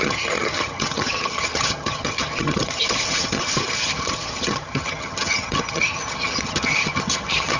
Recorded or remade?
remade